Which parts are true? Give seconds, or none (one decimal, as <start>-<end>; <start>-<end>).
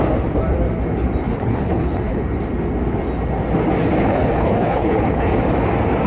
0.0-1.3; 2.2-4.0; 5.3-6.1